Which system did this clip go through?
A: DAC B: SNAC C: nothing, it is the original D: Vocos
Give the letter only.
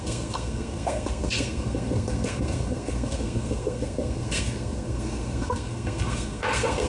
B